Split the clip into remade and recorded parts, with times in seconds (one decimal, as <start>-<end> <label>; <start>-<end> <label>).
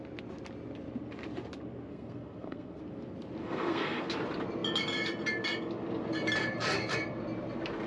0.0-1.9 recorded; 1.9-2.8 remade; 2.8-3.4 recorded; 3.4-4.1 remade; 4.1-7.9 recorded